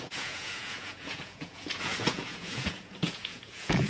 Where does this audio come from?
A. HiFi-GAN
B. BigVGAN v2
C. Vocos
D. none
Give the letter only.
C